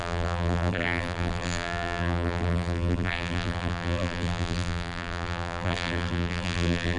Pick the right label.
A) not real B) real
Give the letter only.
A